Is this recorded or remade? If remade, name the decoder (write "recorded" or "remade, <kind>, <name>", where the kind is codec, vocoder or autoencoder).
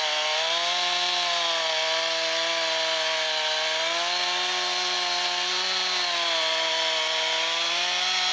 remade, vocoder, BigVGAN v2